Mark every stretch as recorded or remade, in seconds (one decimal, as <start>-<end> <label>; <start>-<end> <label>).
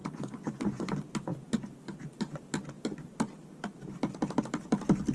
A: 0.0-0.9 remade; 0.9-5.1 recorded